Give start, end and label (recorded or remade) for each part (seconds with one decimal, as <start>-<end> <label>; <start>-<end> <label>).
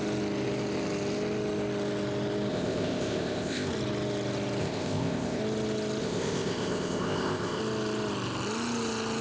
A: 0.0-2.5 recorded; 2.5-3.7 remade; 3.7-4.6 recorded; 4.6-5.4 remade; 5.4-6.0 recorded; 6.0-7.6 remade; 7.6-9.2 recorded